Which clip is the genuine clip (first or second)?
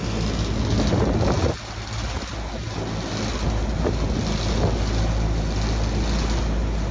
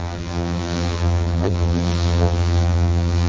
first